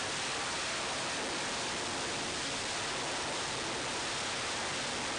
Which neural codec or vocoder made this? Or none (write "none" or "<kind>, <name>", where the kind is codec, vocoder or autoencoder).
none